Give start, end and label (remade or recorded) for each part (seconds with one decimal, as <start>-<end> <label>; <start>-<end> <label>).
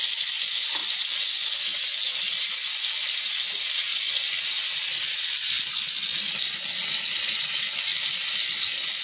0.0-9.0 recorded